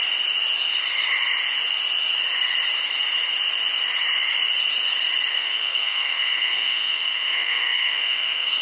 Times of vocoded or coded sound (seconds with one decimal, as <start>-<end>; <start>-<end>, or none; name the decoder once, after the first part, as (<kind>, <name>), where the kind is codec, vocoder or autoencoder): 5.3-8.6 (codec, SNAC)